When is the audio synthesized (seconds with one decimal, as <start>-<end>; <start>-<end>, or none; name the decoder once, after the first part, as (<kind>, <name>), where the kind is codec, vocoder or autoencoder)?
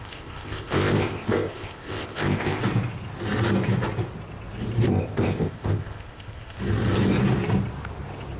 0.0-2.6 (codec, ZipCodec); 4.9-6.6